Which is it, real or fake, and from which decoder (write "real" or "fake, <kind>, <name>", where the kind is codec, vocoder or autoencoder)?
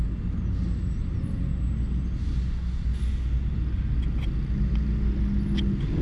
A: real